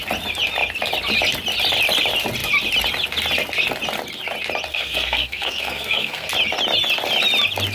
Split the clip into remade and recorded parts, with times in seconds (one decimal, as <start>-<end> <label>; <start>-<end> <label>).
0.0-4.7 recorded; 4.7-6.3 remade; 6.3-7.7 recorded